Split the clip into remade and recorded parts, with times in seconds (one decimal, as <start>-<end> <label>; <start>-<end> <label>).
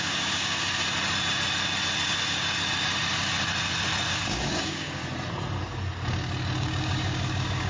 0.0-0.8 remade; 0.8-4.1 recorded; 4.1-5.0 remade; 5.0-6.6 recorded; 6.6-7.7 remade